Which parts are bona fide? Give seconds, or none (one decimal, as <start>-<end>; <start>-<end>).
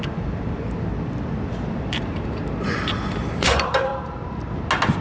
0.9-1.8; 3.9-5.0